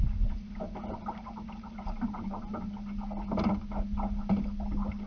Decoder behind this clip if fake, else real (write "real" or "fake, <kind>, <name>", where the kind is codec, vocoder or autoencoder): real